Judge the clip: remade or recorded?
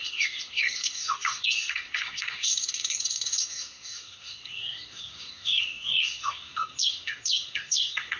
remade